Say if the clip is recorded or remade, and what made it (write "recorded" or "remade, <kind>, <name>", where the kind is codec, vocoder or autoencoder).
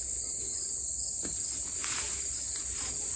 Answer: recorded